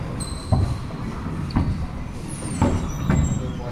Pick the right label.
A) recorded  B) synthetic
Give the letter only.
A